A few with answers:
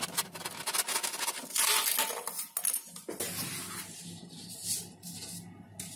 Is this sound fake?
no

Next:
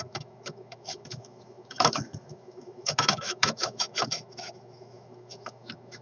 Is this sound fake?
yes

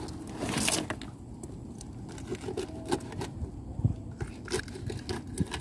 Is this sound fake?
no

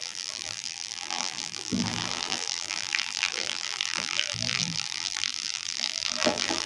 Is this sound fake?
yes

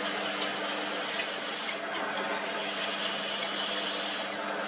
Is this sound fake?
no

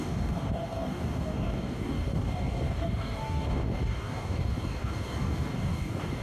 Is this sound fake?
yes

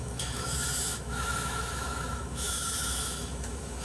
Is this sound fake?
yes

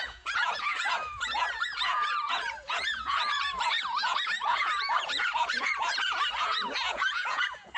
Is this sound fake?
yes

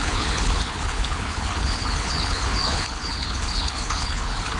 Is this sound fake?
yes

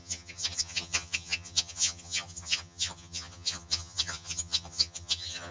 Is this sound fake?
yes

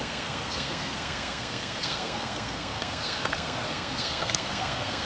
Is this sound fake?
yes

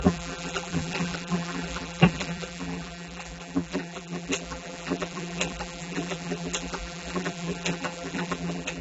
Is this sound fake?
yes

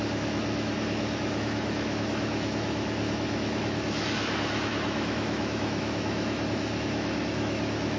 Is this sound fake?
yes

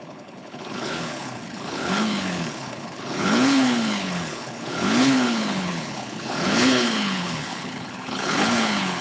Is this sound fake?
yes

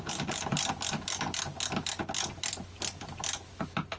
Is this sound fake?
no